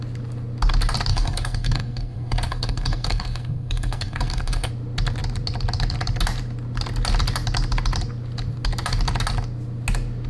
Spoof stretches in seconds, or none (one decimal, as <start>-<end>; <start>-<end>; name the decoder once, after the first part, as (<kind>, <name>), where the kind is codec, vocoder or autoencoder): 1.1-4.7 (codec, SNAC)